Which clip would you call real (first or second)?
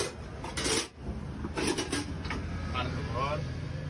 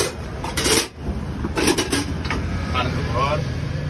first